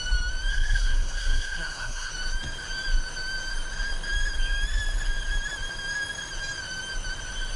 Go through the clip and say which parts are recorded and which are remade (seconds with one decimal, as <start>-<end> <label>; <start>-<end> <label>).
0.0-0.5 recorded; 0.5-2.1 remade; 2.1-7.6 recorded